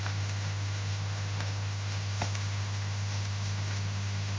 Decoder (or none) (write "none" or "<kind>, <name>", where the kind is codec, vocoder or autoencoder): autoencoder, DAC-VAE